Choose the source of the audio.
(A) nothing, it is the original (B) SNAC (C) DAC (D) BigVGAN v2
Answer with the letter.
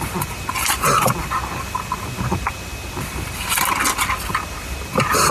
A